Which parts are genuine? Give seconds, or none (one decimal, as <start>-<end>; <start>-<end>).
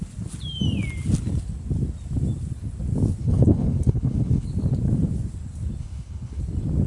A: 0.0-3.2; 4.5-5.8; 6.4-6.9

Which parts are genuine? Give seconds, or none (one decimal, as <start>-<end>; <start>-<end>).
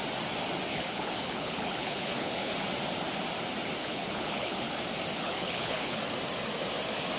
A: 0.0-0.7; 2.5-3.8; 4.7-5.2; 6.0-7.2